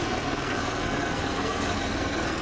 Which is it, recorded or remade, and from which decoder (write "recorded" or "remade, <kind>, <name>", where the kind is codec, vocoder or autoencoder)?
remade, codec, SNAC